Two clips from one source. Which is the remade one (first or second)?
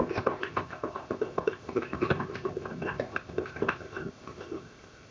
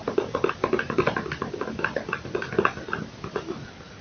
first